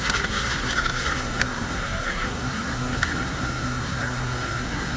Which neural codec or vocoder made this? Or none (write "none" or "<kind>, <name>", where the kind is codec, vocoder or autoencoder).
codec, SNAC